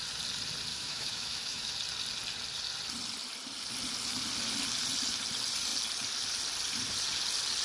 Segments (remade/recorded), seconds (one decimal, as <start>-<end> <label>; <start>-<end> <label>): 0.0-0.7 recorded; 0.7-1.7 remade; 1.7-7.6 recorded